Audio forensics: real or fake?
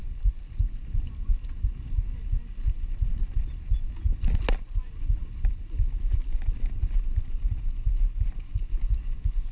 real